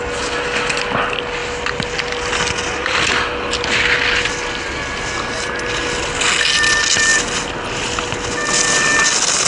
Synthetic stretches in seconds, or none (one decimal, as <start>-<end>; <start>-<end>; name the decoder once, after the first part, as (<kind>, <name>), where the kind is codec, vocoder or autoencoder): none